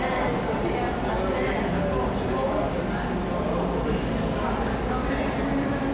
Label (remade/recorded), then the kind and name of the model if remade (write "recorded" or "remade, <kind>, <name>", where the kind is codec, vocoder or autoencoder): recorded